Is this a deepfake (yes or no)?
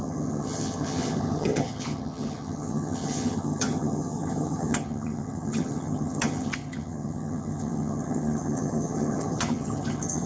yes